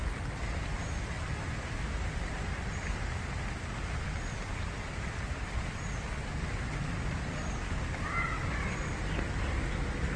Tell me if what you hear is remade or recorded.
recorded